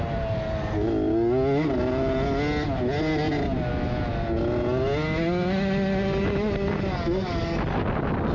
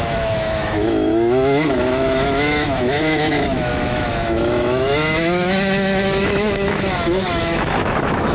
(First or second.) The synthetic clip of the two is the second